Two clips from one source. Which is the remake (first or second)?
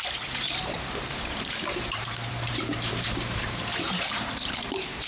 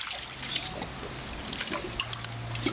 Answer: first